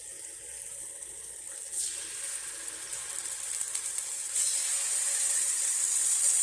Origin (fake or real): real